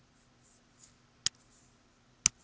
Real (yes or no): yes